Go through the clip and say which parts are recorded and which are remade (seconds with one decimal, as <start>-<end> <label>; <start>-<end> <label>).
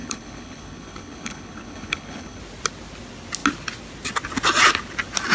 0.0-2.4 remade; 2.4-5.3 recorded